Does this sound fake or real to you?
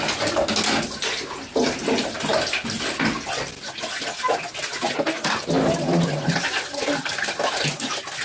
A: real